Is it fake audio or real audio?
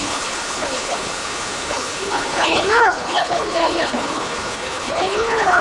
fake